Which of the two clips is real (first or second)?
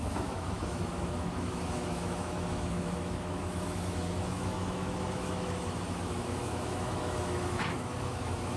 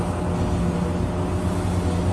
second